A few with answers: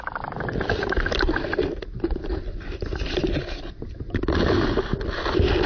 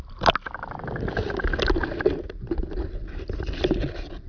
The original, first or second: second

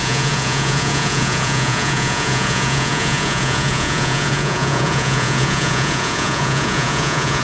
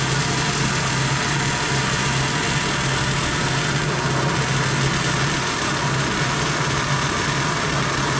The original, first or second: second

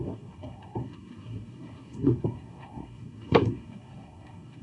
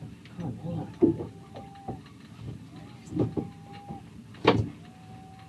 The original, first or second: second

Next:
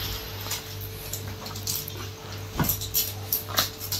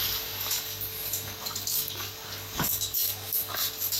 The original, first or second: first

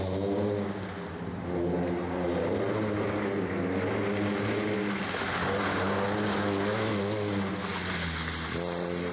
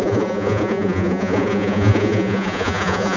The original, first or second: first